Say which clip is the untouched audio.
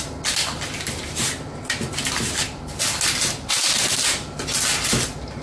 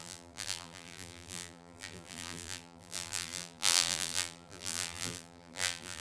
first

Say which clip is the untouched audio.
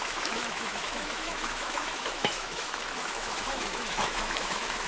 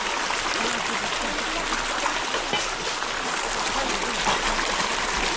second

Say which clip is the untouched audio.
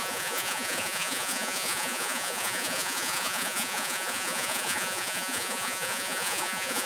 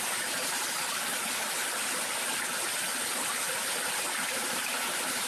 second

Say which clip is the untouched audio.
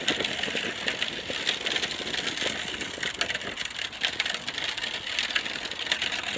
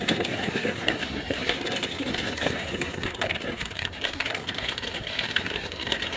first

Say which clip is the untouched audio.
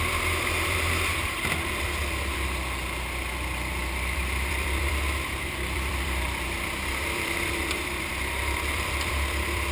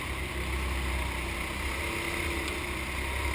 second